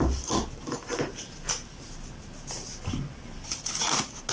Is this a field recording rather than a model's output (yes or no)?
yes